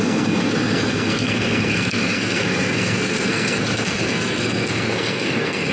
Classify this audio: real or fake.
fake